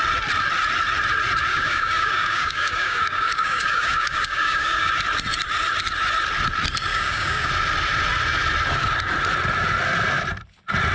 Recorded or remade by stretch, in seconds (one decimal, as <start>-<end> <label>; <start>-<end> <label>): 0.0-1.5 recorded; 1.5-4.9 remade; 4.9-6.9 recorded; 6.9-7.5 remade; 7.5-10.9 recorded